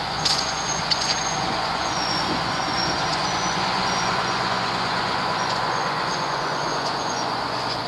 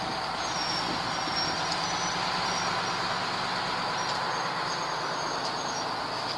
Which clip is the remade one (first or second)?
first